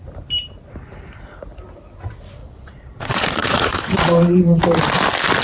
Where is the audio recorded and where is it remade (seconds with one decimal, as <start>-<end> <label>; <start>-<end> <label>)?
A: 0.0-2.4 recorded; 2.4-4.6 remade; 4.6-5.4 recorded